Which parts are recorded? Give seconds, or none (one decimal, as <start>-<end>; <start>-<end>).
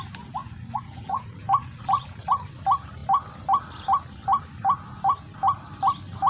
0.0-0.4; 2.3-6.3